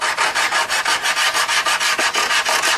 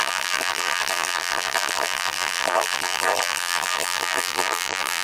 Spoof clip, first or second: second